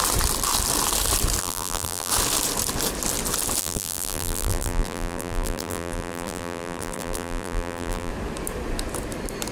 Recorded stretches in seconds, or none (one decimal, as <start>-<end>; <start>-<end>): 0.0-1.4; 2.1-3.6; 8.1-9.5